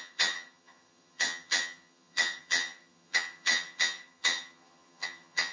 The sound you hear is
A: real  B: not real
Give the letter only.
B